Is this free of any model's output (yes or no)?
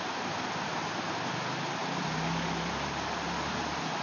yes